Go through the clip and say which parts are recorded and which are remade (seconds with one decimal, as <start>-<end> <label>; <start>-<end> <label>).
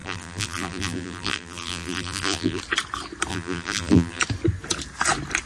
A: 0.0-2.6 remade; 2.6-3.3 recorded; 3.3-4.2 remade; 4.2-5.5 recorded